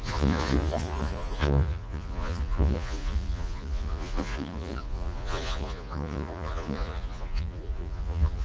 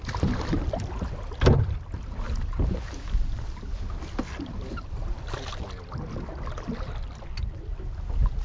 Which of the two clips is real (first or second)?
second